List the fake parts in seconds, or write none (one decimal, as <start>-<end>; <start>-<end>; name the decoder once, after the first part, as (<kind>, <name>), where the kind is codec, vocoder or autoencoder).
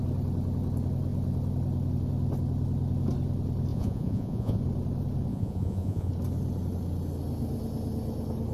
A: 3.7-4.6 (vocoder, Vocos); 5.3-6.1